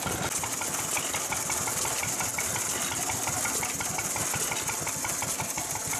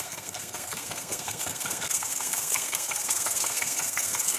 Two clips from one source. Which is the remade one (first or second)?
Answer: second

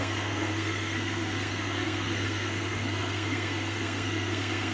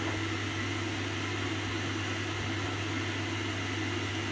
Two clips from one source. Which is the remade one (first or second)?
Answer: first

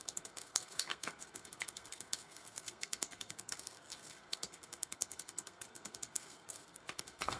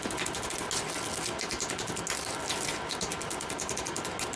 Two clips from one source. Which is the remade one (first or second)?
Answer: first